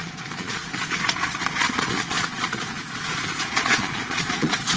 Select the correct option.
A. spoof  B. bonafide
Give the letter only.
A